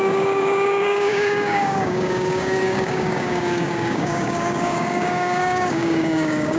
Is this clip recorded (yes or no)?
no